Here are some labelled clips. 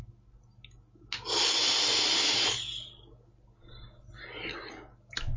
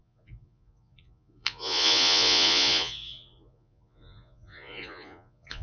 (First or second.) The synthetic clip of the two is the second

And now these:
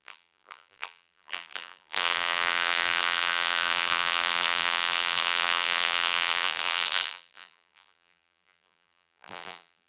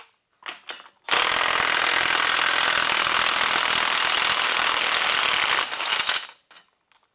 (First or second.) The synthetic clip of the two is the first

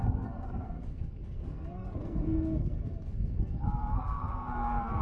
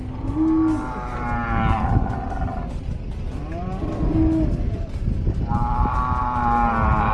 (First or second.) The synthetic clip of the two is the first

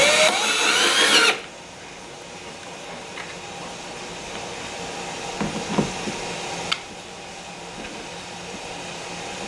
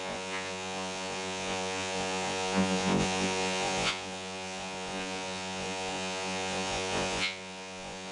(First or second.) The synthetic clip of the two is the second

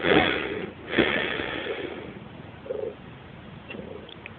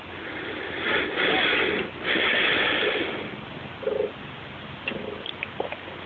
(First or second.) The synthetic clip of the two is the first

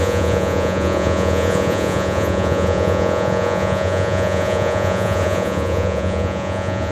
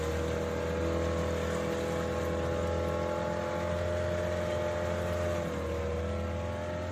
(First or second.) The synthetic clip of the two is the first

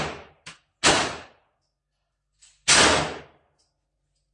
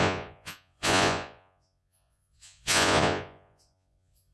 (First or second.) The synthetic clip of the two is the second